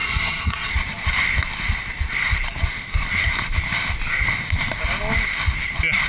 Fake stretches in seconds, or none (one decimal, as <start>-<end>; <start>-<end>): 0.0-0.7